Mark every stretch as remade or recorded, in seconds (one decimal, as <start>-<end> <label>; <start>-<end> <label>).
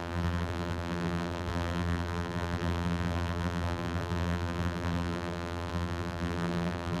0.0-7.0 remade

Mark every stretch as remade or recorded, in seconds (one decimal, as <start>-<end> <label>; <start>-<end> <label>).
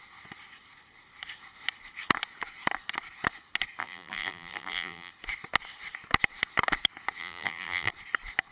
0.0-3.8 recorded; 3.8-5.1 remade; 5.1-7.2 recorded; 7.2-7.9 remade; 7.9-8.5 recorded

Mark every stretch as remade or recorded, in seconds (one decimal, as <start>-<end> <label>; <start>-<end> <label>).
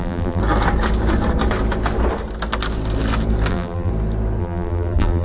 0.0-0.4 remade; 0.4-3.5 recorded; 3.5-3.9 remade; 3.9-4.4 recorded; 4.4-5.2 remade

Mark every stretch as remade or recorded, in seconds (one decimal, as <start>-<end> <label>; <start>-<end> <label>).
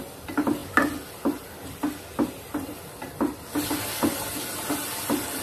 0.0-5.4 recorded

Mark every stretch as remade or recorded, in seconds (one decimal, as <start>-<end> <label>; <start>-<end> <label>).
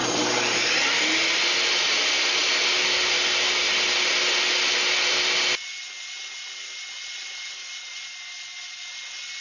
0.0-1.0 remade; 1.0-9.4 recorded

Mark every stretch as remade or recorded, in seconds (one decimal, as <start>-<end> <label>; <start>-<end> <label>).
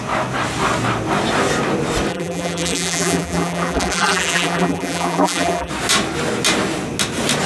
0.0-2.1 recorded; 2.1-5.7 remade; 5.7-7.5 recorded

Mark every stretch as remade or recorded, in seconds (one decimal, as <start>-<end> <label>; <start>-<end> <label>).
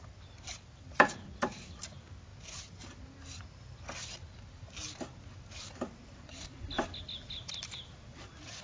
0.0-8.6 recorded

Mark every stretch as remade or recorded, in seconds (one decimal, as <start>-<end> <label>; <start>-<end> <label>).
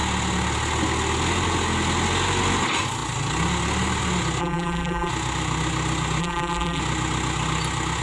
0.0-4.4 recorded; 4.4-5.1 remade; 5.1-6.2 recorded; 6.2-6.8 remade; 6.8-8.0 recorded